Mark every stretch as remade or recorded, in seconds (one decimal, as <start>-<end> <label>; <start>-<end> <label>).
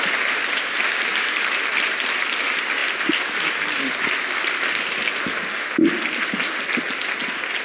0.0-7.6 recorded